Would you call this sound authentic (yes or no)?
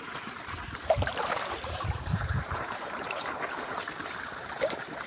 no